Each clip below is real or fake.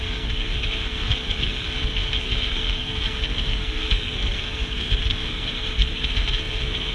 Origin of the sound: fake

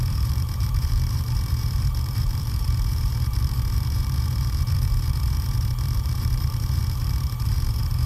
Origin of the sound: fake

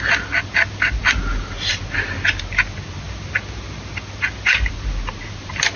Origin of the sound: real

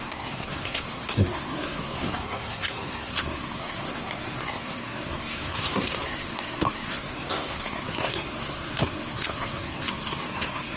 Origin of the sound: fake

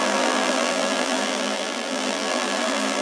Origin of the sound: fake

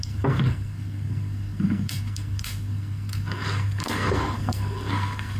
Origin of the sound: fake